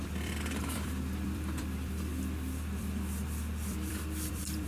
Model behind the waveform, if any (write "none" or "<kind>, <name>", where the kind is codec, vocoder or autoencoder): vocoder, BigVGAN v2